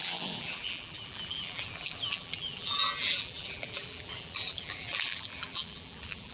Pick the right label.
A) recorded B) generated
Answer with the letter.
B